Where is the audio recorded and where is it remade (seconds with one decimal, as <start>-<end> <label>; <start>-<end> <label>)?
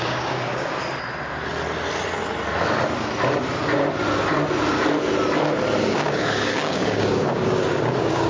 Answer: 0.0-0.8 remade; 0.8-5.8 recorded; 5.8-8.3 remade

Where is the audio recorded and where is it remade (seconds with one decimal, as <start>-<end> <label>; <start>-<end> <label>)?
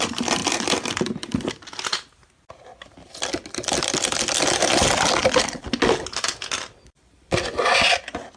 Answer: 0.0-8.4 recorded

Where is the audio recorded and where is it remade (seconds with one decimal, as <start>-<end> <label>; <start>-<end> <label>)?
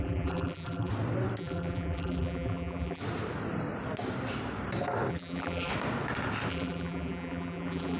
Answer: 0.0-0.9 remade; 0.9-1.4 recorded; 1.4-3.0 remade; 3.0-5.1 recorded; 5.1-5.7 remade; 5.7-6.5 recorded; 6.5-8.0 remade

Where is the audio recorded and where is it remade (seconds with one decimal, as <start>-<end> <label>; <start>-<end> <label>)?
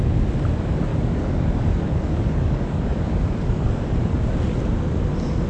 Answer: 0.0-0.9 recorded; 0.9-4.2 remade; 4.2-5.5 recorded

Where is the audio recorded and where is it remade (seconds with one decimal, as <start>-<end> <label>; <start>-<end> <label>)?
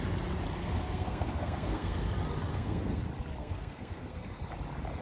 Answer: 0.0-0.6 recorded; 0.6-2.1 remade; 2.1-2.5 recorded; 2.5-3.0 remade; 3.0-3.4 recorded; 3.4-4.5 remade; 4.5-5.0 recorded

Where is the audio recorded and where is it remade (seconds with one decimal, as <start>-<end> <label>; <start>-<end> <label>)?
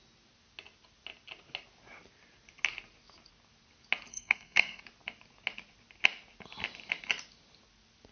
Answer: 0.0-4.1 recorded; 4.1-4.8 remade; 4.8-8.1 recorded